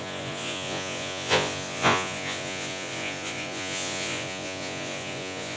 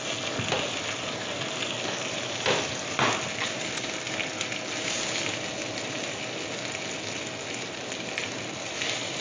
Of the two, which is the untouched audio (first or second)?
second